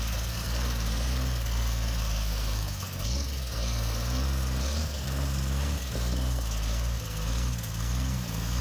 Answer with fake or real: fake